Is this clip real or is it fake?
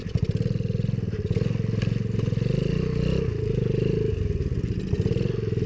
real